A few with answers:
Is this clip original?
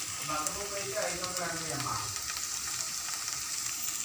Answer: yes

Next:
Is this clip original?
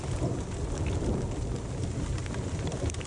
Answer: yes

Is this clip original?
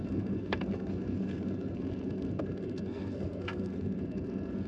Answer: no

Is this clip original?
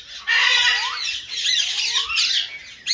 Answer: yes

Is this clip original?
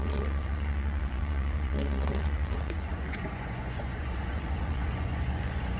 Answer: no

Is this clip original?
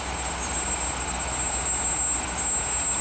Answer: yes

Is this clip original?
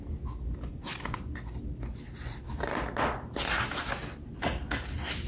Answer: yes